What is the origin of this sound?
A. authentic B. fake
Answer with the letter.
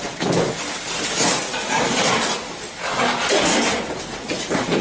A